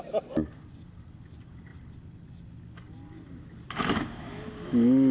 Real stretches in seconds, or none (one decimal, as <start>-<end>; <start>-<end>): 0.0-5.1

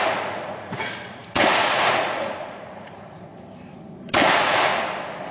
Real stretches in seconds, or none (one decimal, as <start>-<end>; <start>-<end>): 3.3-4.3; 4.7-5.3

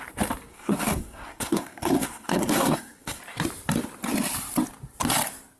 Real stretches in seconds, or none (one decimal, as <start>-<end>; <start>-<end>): 0.0-0.5; 3.2-5.6

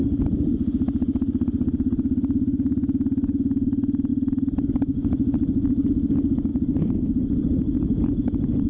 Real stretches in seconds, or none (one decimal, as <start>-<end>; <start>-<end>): 0.0-8.7